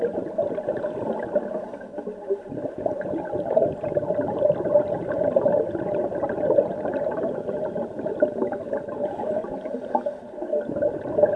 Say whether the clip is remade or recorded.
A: recorded